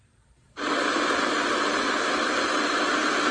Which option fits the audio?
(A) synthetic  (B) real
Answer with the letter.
A